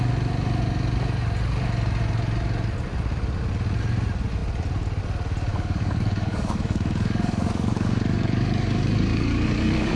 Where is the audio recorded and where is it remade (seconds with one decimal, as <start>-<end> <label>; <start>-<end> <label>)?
0.0-5.5 recorded; 5.5-10.0 remade